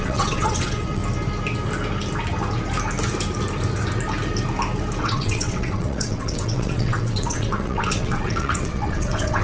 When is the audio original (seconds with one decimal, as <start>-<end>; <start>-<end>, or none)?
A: 1.0-5.0